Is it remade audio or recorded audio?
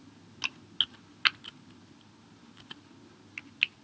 recorded